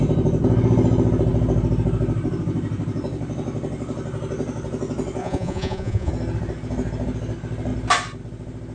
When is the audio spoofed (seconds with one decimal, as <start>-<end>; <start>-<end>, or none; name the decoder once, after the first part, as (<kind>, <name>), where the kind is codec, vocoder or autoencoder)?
5.2-6.1 (vocoder, Vocos)

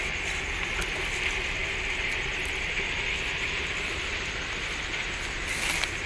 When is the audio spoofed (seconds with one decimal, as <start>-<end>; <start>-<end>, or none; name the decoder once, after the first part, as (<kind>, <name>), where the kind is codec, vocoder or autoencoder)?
none

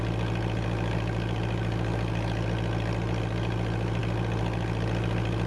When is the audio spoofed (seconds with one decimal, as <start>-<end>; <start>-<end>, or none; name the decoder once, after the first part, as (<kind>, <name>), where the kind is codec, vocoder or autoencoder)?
none

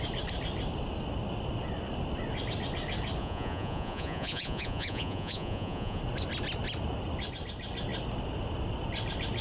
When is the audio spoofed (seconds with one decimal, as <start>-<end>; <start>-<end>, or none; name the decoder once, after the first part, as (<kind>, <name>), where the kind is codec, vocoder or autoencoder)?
3.2-6.0 (vocoder, Vocos)

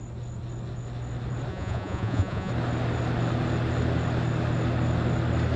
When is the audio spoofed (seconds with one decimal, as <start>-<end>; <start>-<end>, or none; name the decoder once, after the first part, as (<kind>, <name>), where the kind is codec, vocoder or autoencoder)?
1.5-2.5 (vocoder, Vocos)